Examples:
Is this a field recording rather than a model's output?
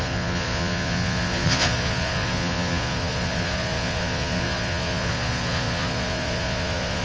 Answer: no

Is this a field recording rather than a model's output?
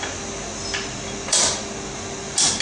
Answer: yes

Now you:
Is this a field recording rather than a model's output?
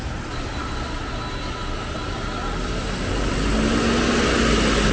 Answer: yes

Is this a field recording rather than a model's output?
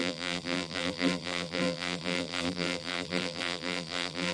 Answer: no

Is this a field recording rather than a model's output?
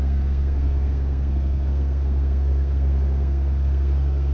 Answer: no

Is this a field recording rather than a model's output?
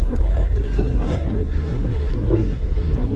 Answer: no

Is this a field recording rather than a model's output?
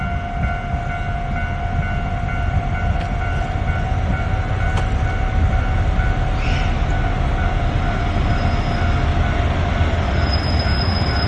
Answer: yes